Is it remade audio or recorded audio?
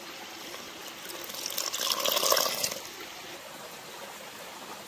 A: recorded